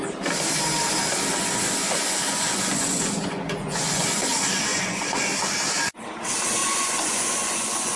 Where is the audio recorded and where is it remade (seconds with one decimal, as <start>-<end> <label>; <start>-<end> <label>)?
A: 0.0-1.3 recorded; 1.3-4.3 remade; 4.3-4.7 recorded; 4.7-5.2 remade; 5.2-6.6 recorded; 6.6-8.0 remade